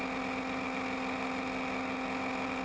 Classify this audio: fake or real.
real